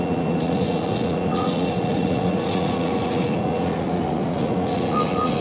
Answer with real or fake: fake